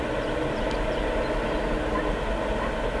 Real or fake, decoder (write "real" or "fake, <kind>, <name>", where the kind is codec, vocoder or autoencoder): real